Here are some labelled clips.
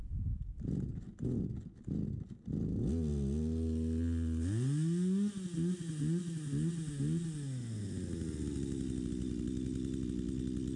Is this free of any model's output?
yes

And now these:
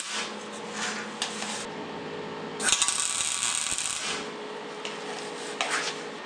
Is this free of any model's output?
yes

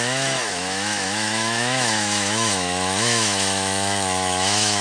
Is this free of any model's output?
no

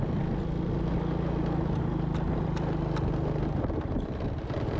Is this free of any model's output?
yes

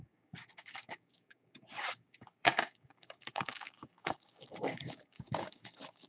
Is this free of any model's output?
no